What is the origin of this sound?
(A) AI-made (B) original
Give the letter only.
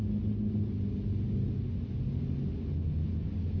B